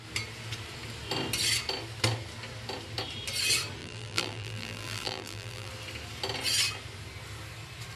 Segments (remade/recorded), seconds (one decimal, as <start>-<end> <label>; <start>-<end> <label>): 0.0-3.8 recorded; 3.8-5.7 remade; 5.7-8.0 recorded